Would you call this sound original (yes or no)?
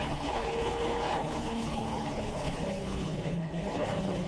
no